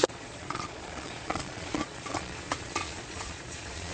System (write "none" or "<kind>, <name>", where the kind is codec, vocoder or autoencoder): vocoder, Vocos